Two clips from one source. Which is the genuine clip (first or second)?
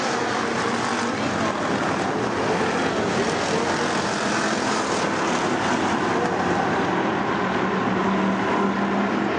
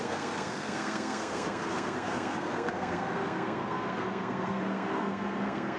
first